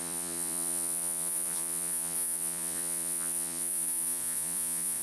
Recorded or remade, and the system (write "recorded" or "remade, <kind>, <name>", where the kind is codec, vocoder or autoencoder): remade, vocoder, Vocos